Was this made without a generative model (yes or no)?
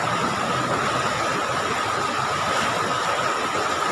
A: yes